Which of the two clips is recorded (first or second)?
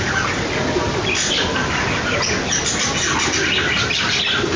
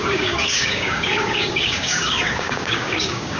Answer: first